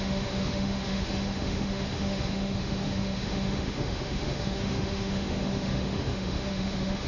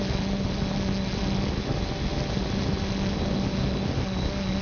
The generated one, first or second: first